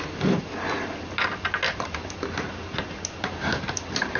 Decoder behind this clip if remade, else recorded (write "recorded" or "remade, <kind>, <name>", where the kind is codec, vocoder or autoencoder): recorded